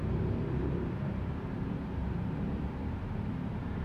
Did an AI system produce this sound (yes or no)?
yes